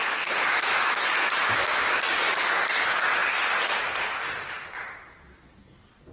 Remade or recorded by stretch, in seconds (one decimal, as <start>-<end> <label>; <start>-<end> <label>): 0.0-2.4 remade; 2.4-6.1 recorded